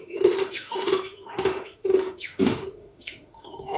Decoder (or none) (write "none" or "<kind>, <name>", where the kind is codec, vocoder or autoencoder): autoencoder, DAC-VAE